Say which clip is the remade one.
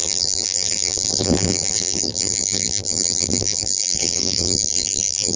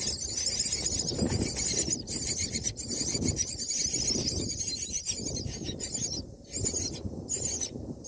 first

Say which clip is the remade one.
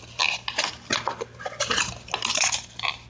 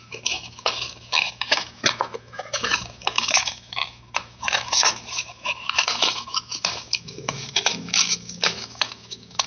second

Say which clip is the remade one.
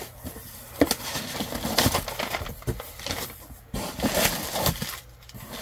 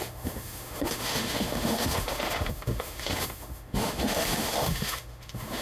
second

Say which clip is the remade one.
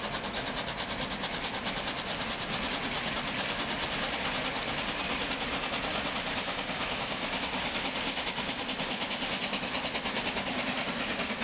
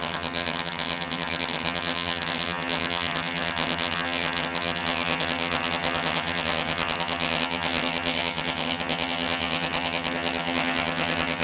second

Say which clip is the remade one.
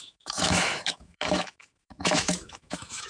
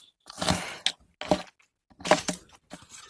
first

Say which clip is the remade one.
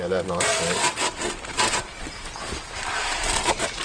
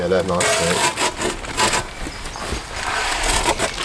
first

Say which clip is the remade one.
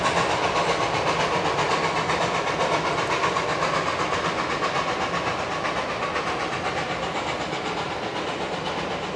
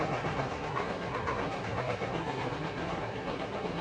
second